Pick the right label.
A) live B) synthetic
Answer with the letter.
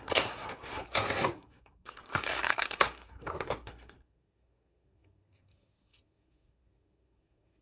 B